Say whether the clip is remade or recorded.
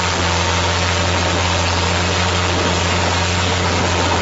recorded